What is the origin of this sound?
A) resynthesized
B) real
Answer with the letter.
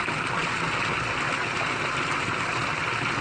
B